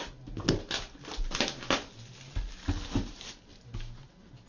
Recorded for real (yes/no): yes